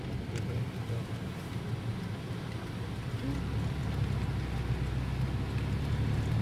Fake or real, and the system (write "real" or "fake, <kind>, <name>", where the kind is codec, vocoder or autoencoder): real